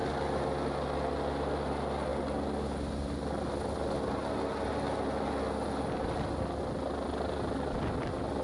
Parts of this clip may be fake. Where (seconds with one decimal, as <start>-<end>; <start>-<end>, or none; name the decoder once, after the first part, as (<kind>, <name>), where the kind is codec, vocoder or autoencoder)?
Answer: none